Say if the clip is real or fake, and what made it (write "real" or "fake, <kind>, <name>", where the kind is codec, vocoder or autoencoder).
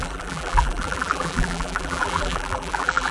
fake, vocoder, BigVGAN v2